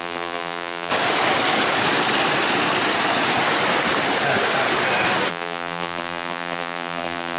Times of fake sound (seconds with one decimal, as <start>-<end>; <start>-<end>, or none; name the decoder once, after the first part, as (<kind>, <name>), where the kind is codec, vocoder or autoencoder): 0.0-0.9 (vocoder, BigVGAN v2); 5.3-7.4